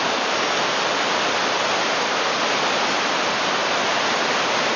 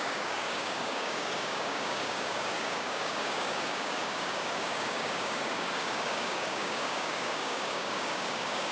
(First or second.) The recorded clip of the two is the first